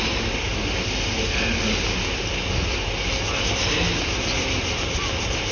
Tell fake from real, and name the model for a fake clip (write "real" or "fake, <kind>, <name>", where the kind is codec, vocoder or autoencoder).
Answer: real